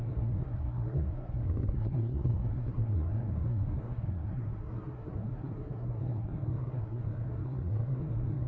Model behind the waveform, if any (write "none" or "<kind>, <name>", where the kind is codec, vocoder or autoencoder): codec, SNAC